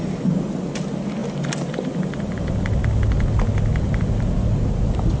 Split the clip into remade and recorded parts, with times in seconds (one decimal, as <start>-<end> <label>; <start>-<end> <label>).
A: 0.0-5.2 recorded